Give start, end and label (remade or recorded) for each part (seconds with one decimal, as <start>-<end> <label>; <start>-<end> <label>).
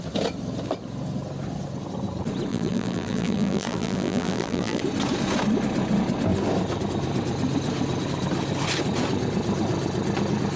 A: 0.0-2.5 recorded; 2.5-4.8 remade; 4.8-10.6 recorded